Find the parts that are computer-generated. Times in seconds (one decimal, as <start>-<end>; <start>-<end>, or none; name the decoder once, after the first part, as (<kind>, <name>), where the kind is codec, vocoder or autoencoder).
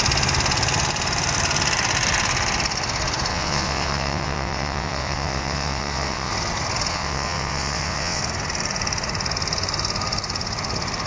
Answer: 3.3-6.3 (vocoder, WaveNeXt); 6.9-8.2